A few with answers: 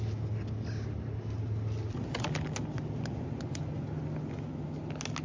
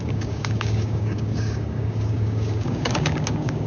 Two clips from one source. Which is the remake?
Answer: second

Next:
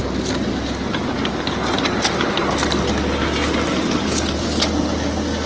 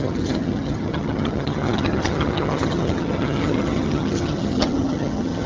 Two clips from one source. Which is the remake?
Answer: second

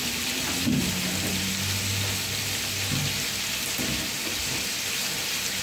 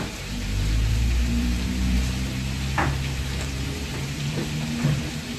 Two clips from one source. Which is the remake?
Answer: second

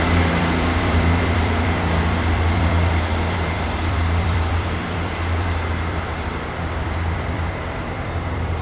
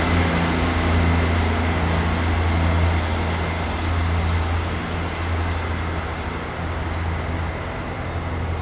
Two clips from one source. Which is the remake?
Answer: first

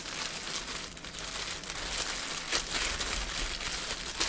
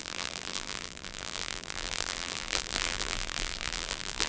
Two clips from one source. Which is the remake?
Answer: second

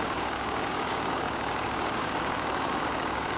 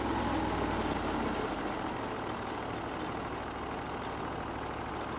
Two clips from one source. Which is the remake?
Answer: first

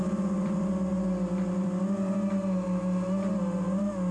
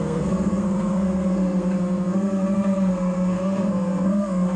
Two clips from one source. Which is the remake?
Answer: second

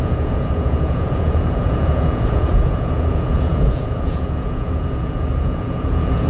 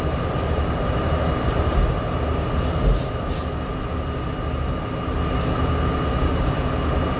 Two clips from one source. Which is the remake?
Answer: first